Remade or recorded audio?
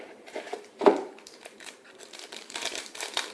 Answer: remade